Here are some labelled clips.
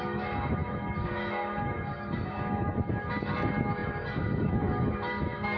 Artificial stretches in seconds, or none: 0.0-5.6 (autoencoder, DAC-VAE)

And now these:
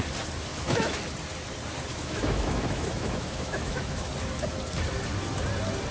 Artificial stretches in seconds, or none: 0.5-1.0 (autoencoder, DAC-VAE); 1.9-4.1